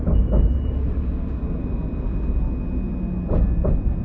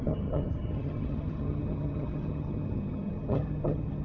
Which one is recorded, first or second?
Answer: first